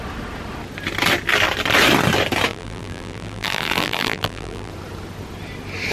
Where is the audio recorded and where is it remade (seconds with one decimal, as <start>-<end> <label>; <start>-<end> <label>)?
0.0-2.5 recorded; 2.5-4.7 remade; 4.7-5.9 recorded